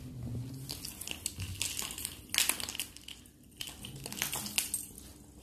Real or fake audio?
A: real